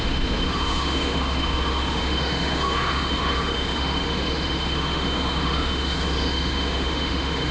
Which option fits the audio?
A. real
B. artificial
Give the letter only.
B